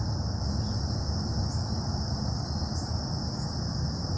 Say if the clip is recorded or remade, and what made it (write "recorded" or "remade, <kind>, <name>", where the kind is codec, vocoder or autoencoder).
recorded